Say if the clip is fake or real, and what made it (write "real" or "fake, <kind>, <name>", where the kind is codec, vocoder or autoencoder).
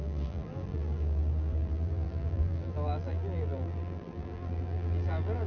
fake, vocoder, BigVGAN v2